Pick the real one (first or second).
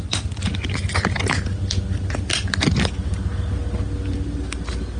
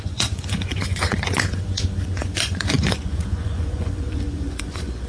first